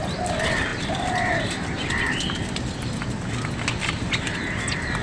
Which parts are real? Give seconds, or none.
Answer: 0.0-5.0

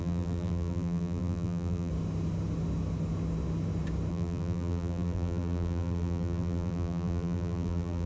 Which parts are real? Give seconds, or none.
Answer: 1.9-4.1

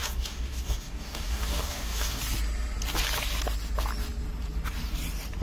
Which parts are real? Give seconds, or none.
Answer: 2.2-5.4